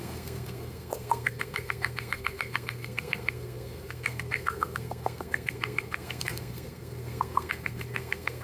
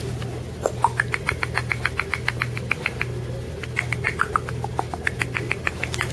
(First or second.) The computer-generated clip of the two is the first